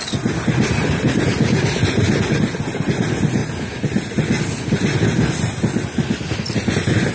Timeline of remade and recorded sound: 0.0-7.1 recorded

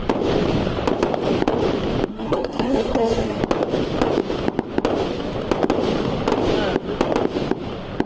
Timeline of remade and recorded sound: 0.0-2.1 recorded; 2.1-3.4 remade; 3.4-8.1 recorded

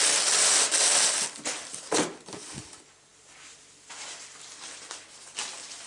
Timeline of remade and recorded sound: 0.0-5.9 recorded

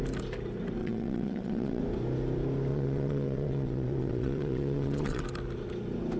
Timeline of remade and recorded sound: 0.0-0.8 recorded; 0.8-1.8 remade; 1.8-2.7 recorded; 2.7-5.2 remade; 5.2-6.2 recorded

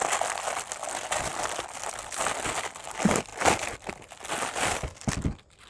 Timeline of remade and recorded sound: 0.0-5.7 recorded

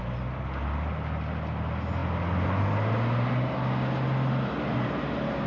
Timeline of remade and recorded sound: 0.0-5.5 recorded